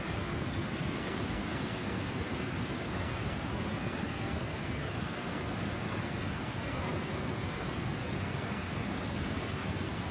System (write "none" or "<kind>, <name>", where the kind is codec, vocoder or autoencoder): codec, SNAC